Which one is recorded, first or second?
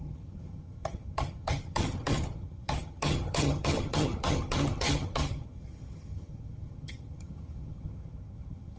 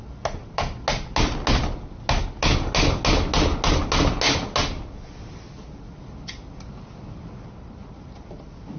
second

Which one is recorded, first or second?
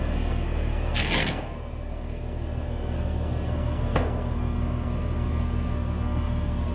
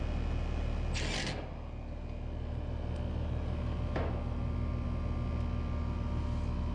second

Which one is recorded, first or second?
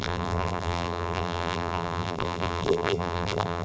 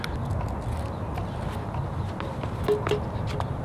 second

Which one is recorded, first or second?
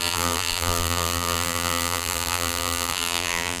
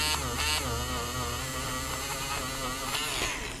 second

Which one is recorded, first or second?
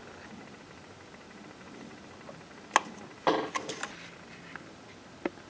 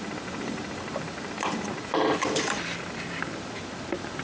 first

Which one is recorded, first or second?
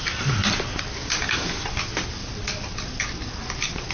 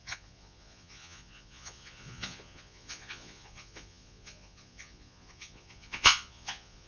first